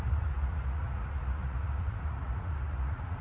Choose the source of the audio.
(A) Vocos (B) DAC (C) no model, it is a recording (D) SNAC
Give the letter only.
A